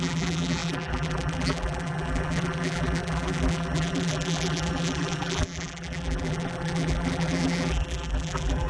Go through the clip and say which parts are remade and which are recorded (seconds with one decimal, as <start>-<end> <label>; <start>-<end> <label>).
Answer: 0.0-8.7 remade

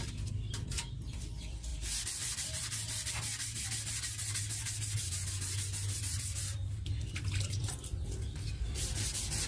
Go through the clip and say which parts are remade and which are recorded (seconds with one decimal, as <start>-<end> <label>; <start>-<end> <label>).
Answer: 0.0-1.7 remade; 1.7-2.2 recorded; 2.2-2.8 remade; 2.8-6.0 recorded; 6.0-9.5 remade

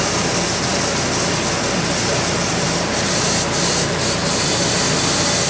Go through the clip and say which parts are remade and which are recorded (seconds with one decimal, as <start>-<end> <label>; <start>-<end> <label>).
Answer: 0.0-4.2 recorded; 4.2-4.7 remade; 4.7-5.5 recorded